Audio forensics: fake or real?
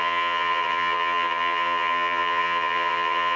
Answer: fake